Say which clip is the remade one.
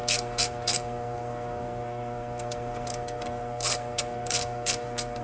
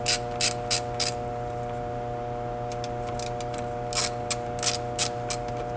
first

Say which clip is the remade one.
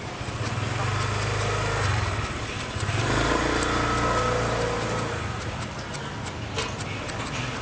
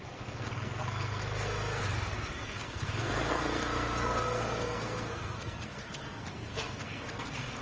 second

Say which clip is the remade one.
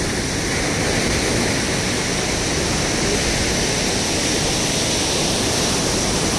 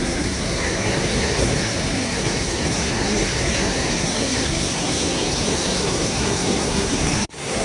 second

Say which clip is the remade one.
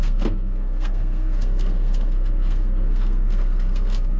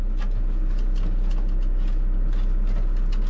first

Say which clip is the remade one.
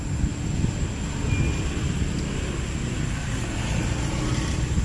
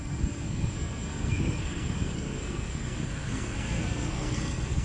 second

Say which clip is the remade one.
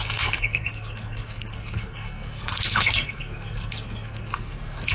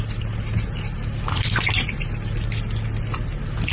first